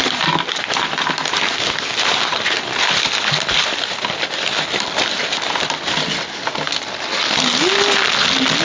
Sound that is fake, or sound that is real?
real